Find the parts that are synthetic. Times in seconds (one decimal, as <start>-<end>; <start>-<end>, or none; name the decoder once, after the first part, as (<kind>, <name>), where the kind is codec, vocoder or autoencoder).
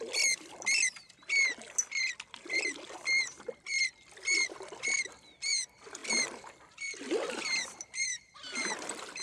0.0-1.2 (vocoder, BigVGAN v2); 1.8-6.0; 6.8-9.2